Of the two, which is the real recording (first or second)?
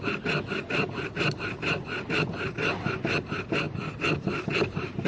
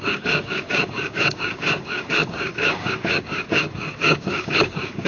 first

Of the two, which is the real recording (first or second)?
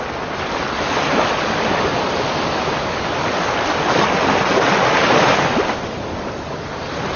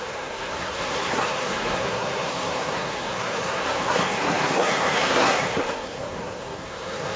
first